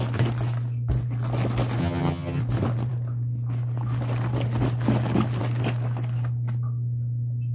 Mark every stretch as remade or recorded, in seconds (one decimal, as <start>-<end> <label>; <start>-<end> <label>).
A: 0.0-1.8 recorded; 1.8-2.4 remade; 2.4-7.5 recorded